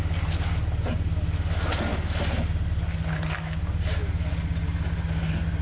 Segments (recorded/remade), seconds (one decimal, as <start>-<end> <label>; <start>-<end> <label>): 0.0-5.6 recorded